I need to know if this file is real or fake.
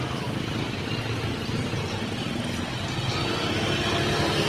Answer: real